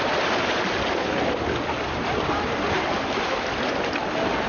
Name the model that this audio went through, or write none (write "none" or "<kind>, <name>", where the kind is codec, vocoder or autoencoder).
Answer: none